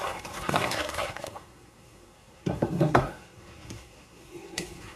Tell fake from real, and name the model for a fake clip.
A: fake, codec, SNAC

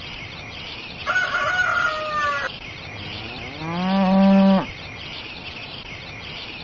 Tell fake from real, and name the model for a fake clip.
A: real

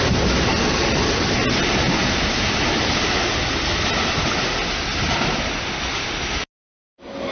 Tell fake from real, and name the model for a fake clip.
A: real